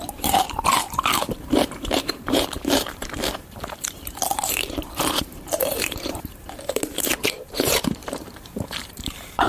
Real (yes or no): no